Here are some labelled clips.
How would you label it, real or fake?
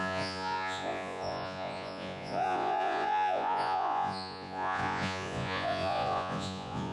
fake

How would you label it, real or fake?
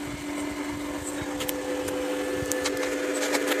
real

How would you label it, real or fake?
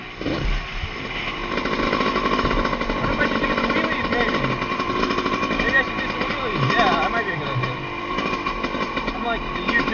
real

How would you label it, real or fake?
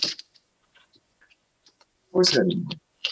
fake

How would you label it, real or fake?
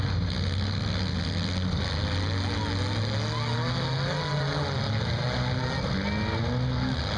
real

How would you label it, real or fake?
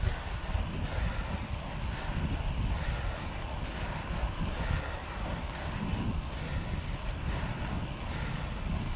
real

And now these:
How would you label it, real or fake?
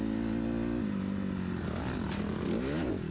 real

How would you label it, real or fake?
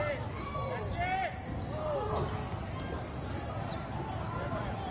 real